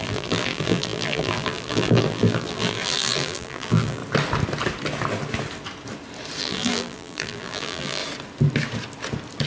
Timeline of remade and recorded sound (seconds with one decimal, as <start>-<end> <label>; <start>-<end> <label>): 0.0-4.0 remade; 4.0-6.4 recorded; 6.4-8.0 remade; 8.0-9.5 recorded